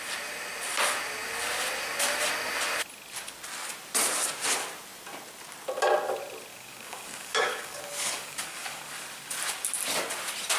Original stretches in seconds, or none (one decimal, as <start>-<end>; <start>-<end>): 0.0-6.5; 8.8-10.6